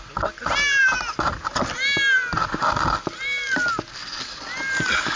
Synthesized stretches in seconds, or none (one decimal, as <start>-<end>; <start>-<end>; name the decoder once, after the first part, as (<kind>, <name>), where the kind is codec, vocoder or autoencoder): none